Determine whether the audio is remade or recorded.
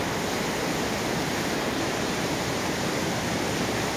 recorded